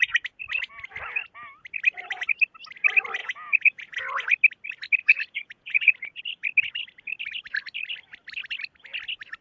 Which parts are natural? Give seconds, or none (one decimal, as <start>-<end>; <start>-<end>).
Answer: 0.0-3.2; 4.0-5.0; 6.2-9.4